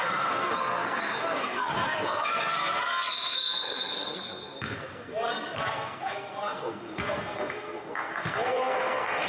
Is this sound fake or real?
fake